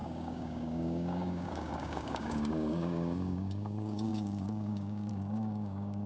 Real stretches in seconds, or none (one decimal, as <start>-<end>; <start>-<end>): none